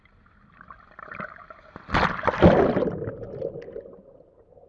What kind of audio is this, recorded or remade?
recorded